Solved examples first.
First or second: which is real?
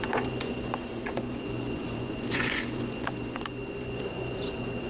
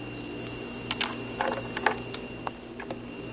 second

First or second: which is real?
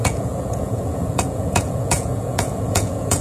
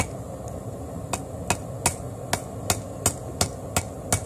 second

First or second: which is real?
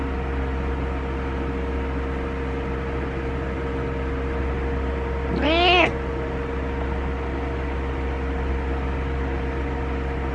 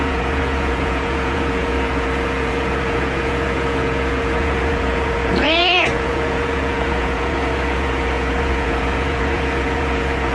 first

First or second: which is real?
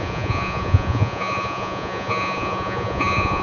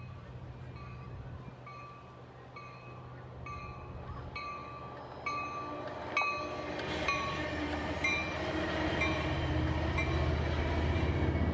second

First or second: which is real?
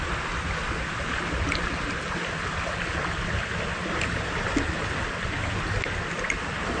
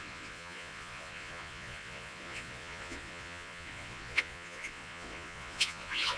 first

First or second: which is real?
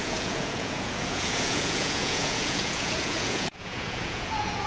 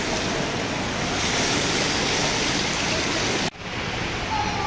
second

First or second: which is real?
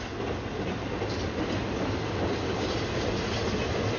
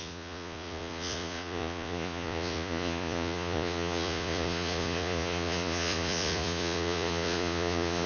first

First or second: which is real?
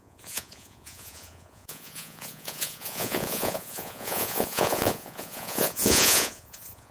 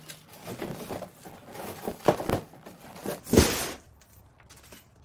second